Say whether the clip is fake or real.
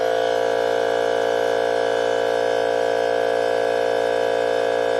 real